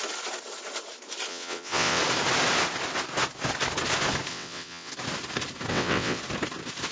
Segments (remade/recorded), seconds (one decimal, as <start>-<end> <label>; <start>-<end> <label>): 0.0-1.3 recorded; 1.3-2.0 remade; 2.0-4.3 recorded; 4.3-4.9 remade; 4.9-5.7 recorded; 5.7-6.2 remade; 6.2-6.9 recorded